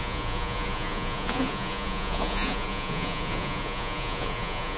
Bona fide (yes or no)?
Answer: no